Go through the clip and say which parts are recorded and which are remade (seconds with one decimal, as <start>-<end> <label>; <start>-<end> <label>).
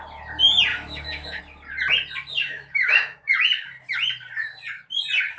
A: 0.0-0.7 recorded; 0.7-1.4 remade; 1.4-2.4 recorded; 2.4-3.3 remade; 3.3-5.4 recorded